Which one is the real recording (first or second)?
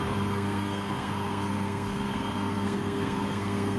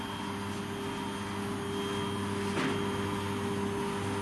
second